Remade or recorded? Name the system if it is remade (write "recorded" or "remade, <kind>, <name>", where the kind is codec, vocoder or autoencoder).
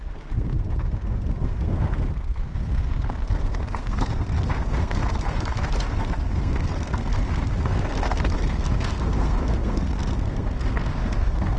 remade, codec, SNAC